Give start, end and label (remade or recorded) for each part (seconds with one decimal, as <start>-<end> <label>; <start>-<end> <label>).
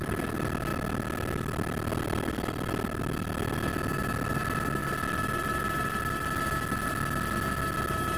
0.0-8.2 recorded